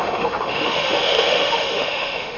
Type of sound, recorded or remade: remade